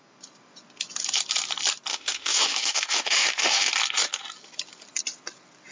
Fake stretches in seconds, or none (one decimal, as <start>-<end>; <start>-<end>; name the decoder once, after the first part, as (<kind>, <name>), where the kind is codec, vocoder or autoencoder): 1.9-3.7 (autoencoder, DAC-VAE)